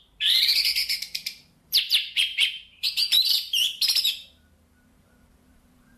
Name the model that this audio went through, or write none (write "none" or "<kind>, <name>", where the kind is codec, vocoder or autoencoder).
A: vocoder, BigVGAN v2